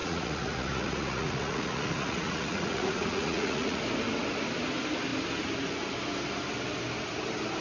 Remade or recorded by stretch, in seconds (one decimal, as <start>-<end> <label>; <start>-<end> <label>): 0.0-3.8 remade; 3.8-7.6 recorded